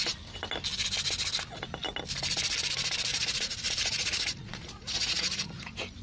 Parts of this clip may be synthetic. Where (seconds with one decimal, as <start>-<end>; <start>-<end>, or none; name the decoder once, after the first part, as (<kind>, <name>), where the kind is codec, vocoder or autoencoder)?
3.1-5.4 (vocoder, Vocos)